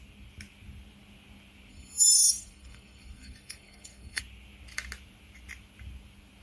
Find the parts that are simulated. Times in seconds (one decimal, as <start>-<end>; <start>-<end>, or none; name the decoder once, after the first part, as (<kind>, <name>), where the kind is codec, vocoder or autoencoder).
1.7-4.2 (codec, SNAC)